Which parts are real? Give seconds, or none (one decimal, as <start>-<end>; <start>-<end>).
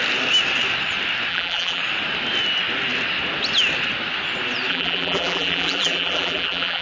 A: 0.0-1.3; 1.8-4.7